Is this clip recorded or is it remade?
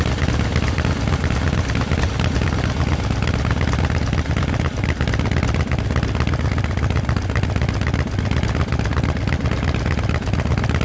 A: recorded